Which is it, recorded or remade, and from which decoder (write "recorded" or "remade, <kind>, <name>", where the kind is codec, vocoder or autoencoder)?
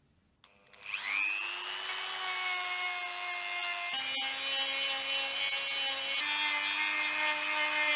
recorded